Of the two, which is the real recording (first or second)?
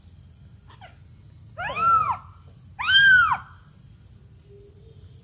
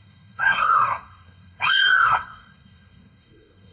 first